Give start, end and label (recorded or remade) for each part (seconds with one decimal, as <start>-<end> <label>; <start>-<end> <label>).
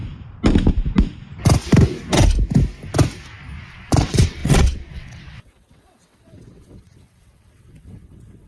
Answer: 0.0-3.6 recorded; 3.6-8.5 remade